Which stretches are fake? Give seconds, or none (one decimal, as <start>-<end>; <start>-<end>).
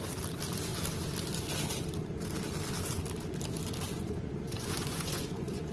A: 3.9-5.7